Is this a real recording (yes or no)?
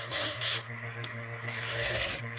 no